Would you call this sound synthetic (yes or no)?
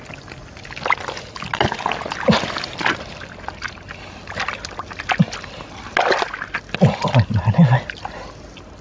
no